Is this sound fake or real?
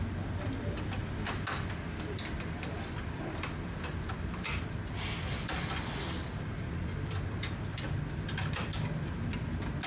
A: real